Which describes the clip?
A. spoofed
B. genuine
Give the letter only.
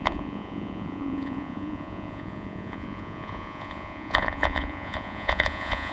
A